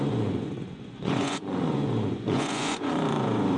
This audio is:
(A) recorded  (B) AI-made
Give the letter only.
B